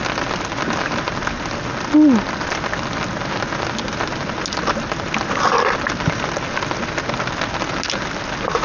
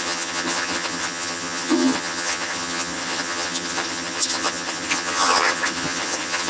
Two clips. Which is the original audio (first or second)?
first